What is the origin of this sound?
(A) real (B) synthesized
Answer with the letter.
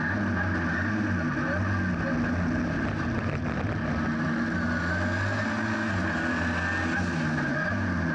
A